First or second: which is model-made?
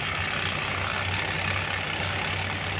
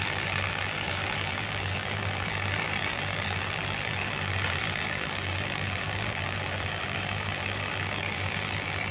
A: second